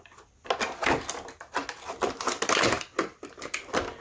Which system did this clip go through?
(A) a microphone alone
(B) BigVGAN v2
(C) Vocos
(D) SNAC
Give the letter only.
A